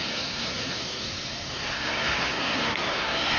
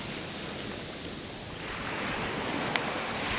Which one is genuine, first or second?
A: second